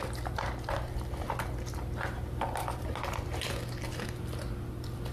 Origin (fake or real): real